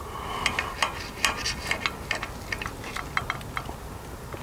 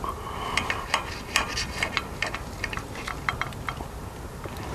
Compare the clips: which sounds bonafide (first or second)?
first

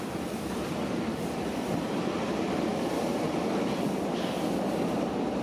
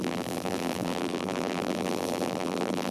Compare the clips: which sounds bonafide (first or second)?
first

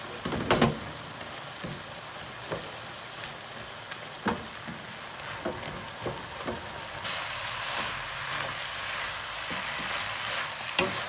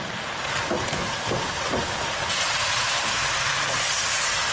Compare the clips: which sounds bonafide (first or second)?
first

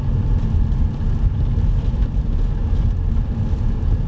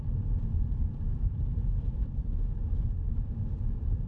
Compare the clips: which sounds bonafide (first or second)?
first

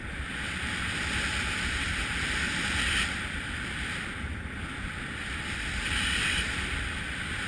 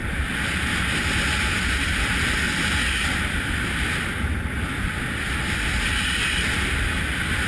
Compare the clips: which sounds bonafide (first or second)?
second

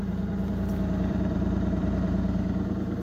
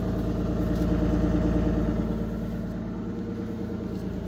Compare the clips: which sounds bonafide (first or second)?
second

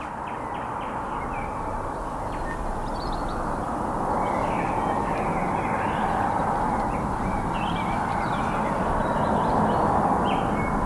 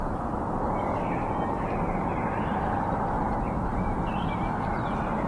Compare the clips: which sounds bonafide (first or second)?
first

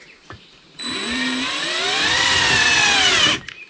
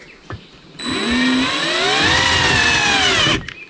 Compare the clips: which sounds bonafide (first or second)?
second